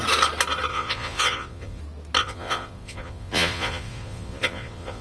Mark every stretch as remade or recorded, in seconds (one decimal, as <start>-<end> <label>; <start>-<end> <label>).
0.0-0.7 recorded; 0.7-1.8 remade; 1.8-2.2 recorded; 2.2-5.0 remade